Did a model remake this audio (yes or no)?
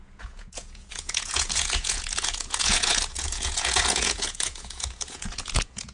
yes